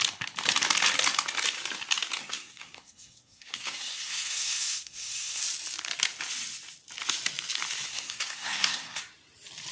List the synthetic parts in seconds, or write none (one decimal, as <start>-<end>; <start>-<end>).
2.2-5.4; 7.9-9.0